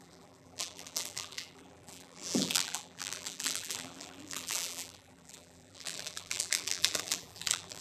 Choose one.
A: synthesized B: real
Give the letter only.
A